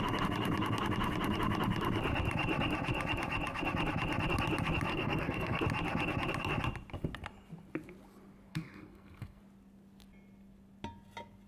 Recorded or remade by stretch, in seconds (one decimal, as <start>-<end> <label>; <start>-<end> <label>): 0.0-4.9 recorded; 4.9-5.6 remade; 5.6-8.5 recorded; 8.5-9.4 remade; 9.4-11.5 recorded